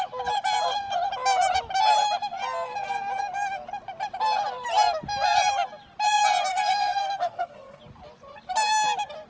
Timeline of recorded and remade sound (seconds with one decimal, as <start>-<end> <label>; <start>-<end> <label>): 0.0-6.5 recorded; 6.5-7.8 remade; 7.8-9.3 recorded